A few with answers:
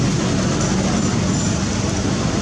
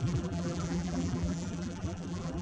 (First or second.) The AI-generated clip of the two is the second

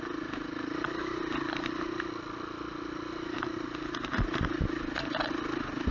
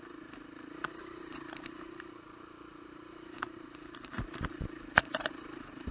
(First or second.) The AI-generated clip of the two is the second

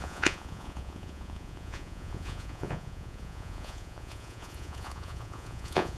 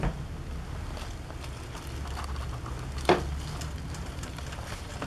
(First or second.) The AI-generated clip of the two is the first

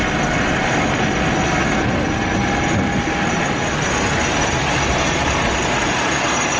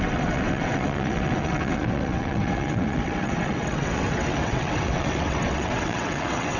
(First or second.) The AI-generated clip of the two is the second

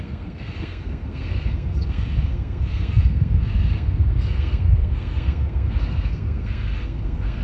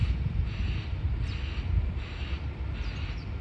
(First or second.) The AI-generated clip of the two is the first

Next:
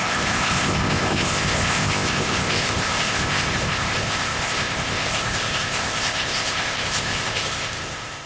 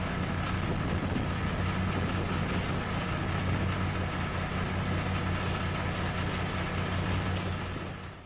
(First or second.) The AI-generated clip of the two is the first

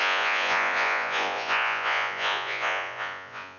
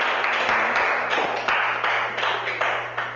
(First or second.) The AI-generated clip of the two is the first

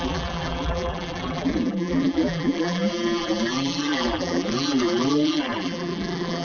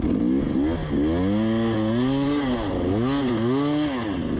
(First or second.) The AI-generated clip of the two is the first